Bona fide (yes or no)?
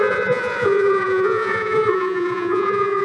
no